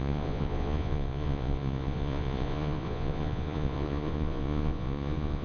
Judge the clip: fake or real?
fake